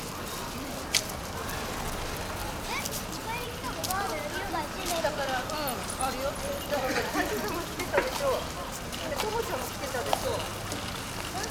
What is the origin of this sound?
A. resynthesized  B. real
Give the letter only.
B